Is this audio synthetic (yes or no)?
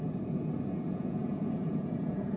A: yes